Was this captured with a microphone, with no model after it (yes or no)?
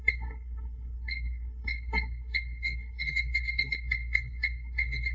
no